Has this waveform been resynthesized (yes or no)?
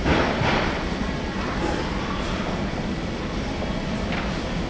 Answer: no